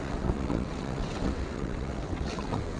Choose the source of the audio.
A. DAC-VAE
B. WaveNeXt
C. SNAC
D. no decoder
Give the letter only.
B